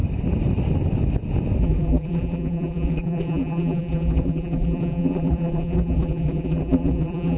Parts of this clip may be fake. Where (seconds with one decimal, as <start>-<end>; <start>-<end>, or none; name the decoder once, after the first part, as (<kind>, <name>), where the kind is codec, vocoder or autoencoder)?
1.6-7.4 (vocoder, BigVGAN v2)

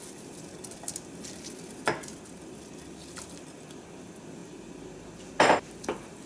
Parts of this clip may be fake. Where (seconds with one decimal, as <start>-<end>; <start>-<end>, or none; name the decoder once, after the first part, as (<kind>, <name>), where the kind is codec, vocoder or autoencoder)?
none